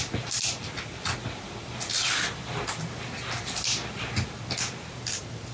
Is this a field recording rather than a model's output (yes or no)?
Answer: yes